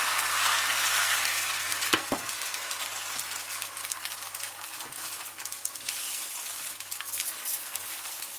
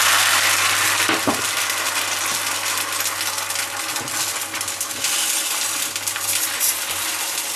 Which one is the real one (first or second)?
second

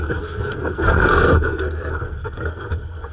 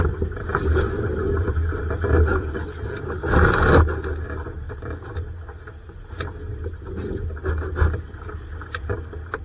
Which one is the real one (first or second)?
second